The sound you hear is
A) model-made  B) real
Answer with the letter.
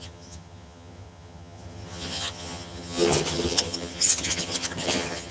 A